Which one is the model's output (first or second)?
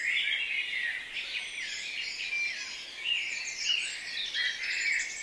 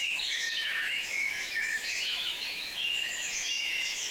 second